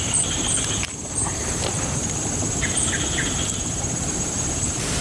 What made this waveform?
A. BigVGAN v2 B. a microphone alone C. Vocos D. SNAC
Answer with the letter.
A